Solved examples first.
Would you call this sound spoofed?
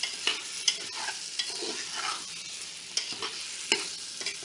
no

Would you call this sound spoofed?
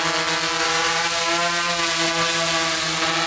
no